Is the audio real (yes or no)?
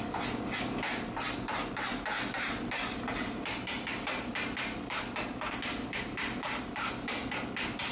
yes